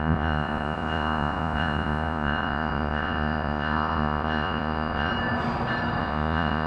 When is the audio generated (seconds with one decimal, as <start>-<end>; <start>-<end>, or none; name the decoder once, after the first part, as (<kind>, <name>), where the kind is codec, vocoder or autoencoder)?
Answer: 0.0-5.1 (vocoder, Vocos); 6.0-6.7